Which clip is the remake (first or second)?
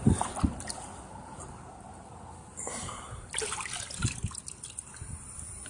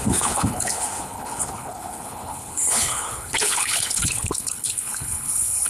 second